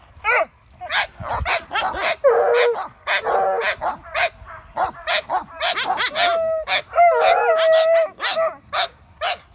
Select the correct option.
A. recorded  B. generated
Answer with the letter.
A